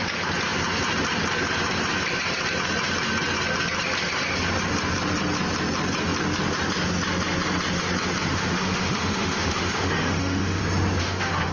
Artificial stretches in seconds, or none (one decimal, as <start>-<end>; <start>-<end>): 8.3-10.6; 11.0-11.5